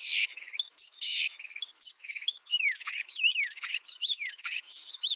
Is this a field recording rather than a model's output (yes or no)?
no